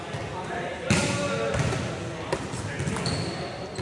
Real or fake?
real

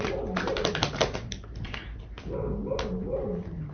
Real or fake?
real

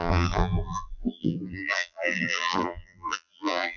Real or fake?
fake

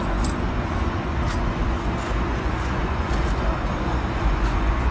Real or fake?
fake